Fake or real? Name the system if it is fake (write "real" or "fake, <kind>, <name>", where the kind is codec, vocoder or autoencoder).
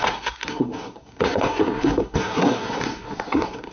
fake, codec, SNAC